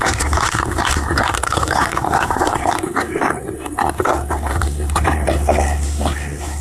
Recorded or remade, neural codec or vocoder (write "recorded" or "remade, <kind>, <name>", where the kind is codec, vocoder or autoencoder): remade, codec, SNAC